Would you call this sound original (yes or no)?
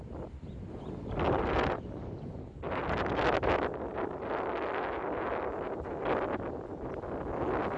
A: yes